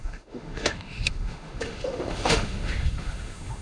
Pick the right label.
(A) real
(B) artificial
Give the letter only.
B